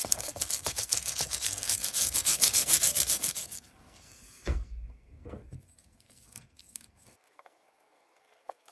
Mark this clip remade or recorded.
remade